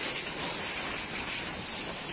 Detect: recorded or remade recorded